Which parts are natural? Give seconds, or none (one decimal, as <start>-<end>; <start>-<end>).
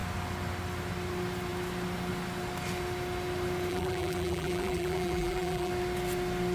0.0-3.7; 5.7-6.5